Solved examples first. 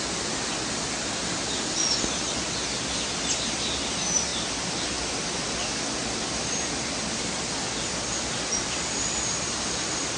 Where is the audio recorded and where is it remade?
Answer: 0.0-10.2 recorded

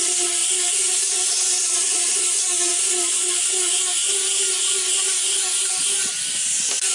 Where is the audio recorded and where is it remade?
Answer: 0.0-6.9 recorded